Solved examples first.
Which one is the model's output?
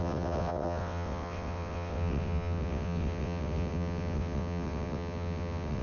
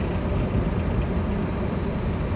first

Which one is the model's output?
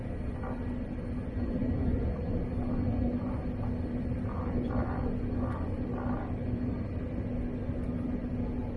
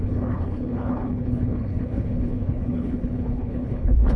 second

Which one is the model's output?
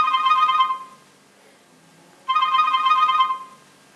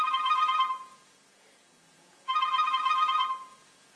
second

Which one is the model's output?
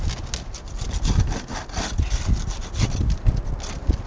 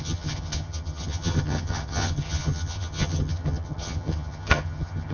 second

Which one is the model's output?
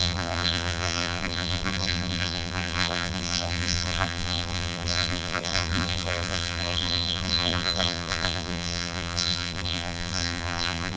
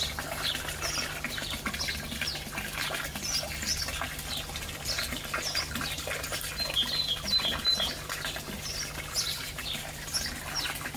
first